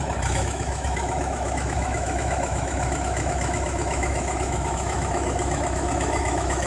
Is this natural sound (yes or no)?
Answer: no